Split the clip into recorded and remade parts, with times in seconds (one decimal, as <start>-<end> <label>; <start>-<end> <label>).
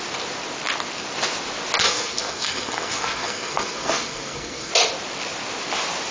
0.0-1.8 recorded; 1.8-4.7 remade; 4.7-6.1 recorded